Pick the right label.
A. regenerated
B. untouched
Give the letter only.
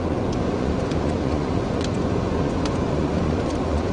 A